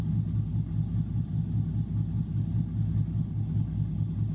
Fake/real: real